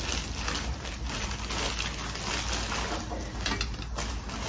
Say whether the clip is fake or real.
real